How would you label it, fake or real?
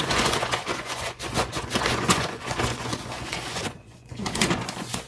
fake